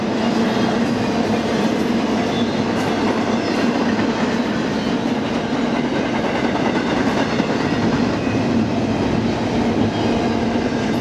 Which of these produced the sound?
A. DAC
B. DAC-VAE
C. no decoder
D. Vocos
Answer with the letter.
C